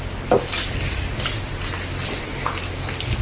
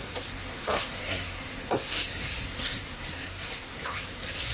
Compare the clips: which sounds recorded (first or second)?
first